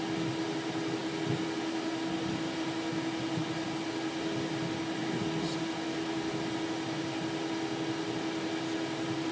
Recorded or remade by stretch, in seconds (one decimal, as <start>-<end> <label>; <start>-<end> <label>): 0.0-9.3 recorded